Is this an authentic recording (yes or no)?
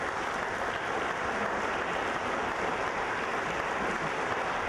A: yes